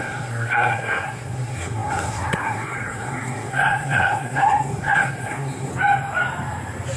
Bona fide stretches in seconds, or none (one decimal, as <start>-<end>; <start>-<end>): 5.7-7.0